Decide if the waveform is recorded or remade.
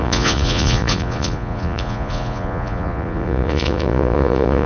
remade